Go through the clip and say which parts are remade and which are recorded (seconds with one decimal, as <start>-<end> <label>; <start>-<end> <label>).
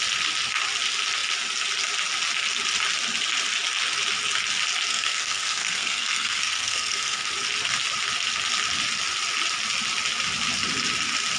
0.0-4.9 recorded; 4.9-7.3 remade; 7.3-11.4 recorded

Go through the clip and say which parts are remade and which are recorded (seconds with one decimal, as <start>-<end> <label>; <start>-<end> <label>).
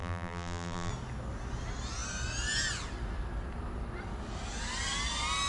0.0-0.9 remade; 0.9-5.5 recorded